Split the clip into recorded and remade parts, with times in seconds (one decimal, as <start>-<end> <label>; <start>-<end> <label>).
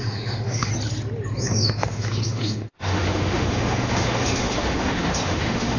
0.0-0.7 remade; 0.7-1.4 recorded; 1.4-5.8 remade